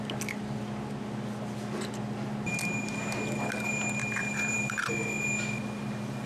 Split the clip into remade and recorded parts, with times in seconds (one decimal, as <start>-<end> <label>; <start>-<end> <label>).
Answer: 0.0-4.0 recorded; 4.0-4.9 remade; 4.9-6.3 recorded